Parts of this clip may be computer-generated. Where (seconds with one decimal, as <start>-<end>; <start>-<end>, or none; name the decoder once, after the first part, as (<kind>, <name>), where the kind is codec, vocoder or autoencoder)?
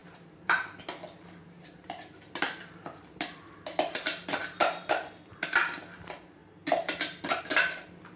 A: 0.0-6.4 (vocoder, BigVGAN v2); 7.4-8.2